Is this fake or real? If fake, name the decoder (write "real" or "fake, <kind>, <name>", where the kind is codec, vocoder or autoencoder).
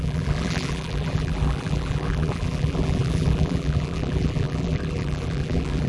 fake, vocoder, BigVGAN v2